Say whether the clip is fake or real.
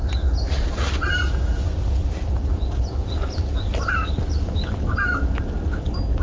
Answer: real